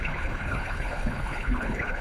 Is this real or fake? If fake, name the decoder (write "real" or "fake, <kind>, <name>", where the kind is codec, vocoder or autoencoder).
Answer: fake, codec, HILCodec